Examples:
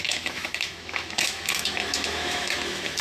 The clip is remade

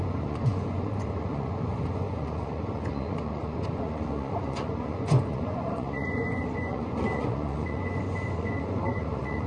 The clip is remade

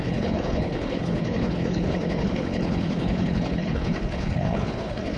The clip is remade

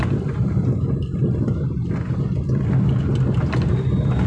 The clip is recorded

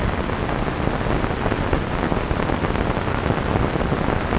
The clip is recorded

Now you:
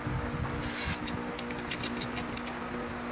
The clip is recorded